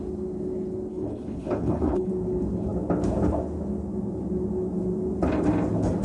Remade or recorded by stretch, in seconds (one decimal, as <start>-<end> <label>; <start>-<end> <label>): 0.0-0.9 recorded; 0.9-2.1 remade; 2.1-6.0 recorded